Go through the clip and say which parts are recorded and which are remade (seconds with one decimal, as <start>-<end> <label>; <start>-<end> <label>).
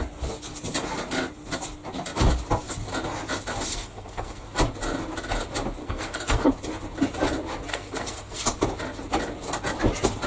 0.0-3.7 recorded; 3.7-4.5 remade; 4.5-5.8 recorded; 5.8-6.5 remade; 6.5-7.7 recorded; 7.7-8.4 remade; 8.4-10.3 recorded